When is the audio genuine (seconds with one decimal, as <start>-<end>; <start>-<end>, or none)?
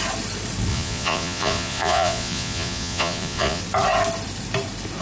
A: 0.0-0.7; 3.6-5.0